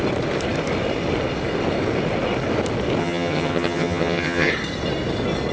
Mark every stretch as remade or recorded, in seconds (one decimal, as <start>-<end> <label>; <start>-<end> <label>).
0.0-3.0 recorded; 3.0-4.5 remade; 4.5-5.5 recorded